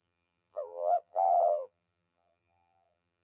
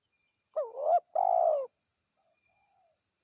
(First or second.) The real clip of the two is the second